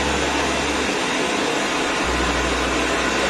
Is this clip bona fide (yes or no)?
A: yes